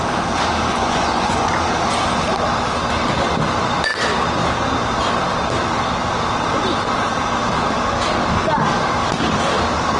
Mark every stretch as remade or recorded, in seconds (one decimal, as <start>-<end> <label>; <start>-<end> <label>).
0.0-0.7 recorded; 0.7-1.5 remade; 1.5-10.0 recorded